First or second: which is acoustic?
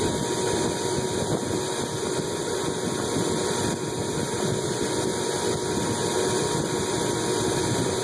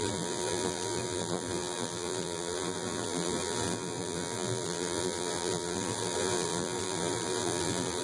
first